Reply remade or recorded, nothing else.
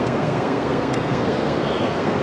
remade